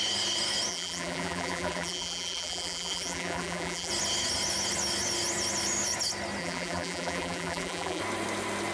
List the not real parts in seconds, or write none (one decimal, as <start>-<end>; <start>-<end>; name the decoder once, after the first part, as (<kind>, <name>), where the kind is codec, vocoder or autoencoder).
0.7-3.9 (vocoder, BigVGAN v2); 6.4-8.0